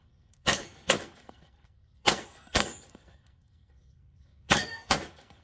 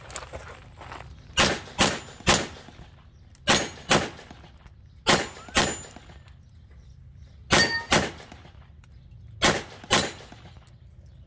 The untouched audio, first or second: second